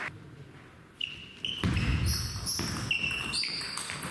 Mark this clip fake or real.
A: real